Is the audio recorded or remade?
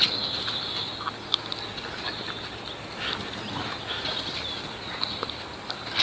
recorded